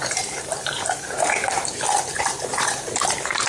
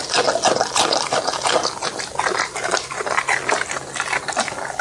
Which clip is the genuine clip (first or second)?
second